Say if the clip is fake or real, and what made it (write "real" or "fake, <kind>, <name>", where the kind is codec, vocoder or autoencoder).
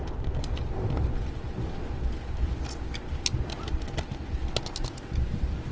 real